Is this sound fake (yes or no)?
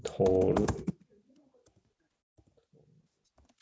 no